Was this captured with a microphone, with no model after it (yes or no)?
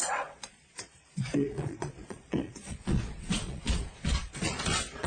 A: no